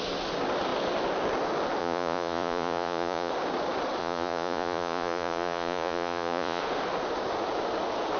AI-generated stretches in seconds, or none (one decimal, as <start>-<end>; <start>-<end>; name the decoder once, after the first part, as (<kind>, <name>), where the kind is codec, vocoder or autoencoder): 1.8-3.3 (vocoder, Vocos); 4.0-6.6